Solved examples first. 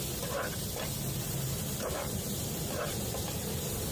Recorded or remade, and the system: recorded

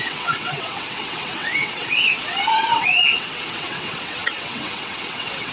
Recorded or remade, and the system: remade, vocoder, WaveNeXt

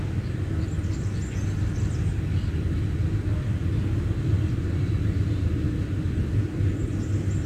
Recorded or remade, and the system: recorded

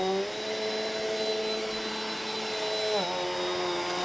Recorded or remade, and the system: recorded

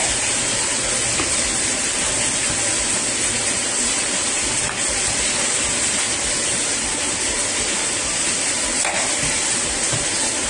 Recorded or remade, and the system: recorded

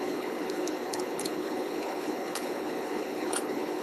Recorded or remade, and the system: remade, codec, HILCodec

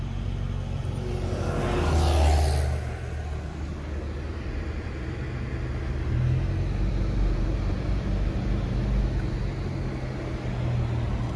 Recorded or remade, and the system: recorded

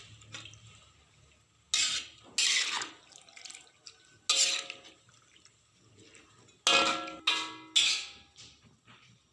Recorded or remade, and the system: recorded